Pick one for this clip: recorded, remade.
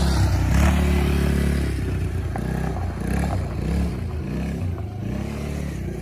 recorded